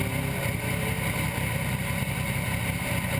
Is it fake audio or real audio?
real